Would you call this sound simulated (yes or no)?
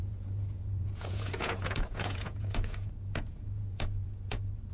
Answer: yes